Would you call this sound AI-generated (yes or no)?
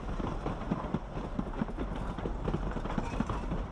no